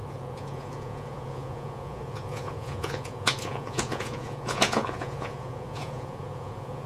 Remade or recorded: remade